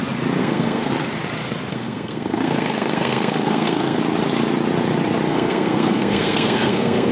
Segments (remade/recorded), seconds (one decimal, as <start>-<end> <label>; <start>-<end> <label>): 0.0-0.4 recorded; 0.4-0.9 remade; 0.9-1.7 recorded; 1.7-4.0 remade; 4.0-5.3 recorded; 5.3-7.1 remade